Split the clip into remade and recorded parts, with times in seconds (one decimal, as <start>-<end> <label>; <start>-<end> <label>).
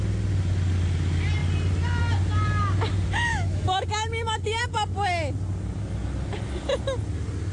0.0-3.3 recorded; 3.3-4.6 remade; 4.6-7.5 recorded